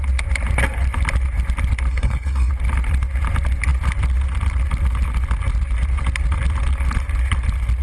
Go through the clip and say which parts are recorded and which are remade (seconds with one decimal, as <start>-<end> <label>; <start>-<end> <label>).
0.0-1.9 recorded; 1.9-2.5 remade; 2.5-7.8 recorded

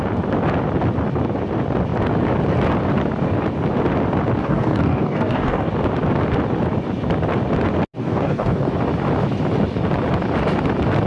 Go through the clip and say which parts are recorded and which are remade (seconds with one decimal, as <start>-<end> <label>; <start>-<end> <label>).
0.0-4.4 recorded; 4.4-5.7 remade; 5.7-8.0 recorded; 8.0-8.7 remade; 8.7-11.1 recorded

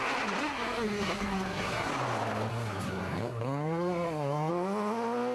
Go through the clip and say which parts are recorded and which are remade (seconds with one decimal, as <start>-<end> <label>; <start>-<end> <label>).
0.0-0.4 recorded; 0.4-1.9 remade; 1.9-2.5 recorded; 2.5-4.5 remade; 4.5-5.3 recorded